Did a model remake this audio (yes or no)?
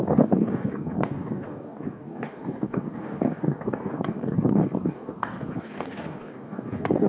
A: yes